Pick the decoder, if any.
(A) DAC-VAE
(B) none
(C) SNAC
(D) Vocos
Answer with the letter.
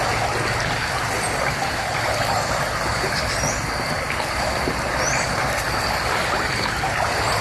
B